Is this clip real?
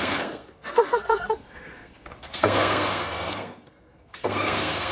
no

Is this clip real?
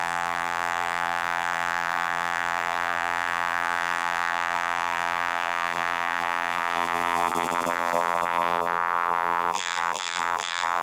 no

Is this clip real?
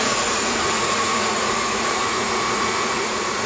no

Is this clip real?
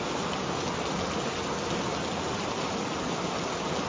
yes